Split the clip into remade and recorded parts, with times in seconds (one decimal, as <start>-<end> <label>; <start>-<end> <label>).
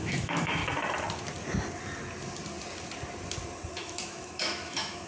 0.0-0.6 remade; 0.6-3.7 recorded; 3.7-5.1 remade